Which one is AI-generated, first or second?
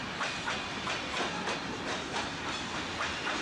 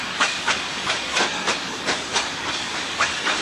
second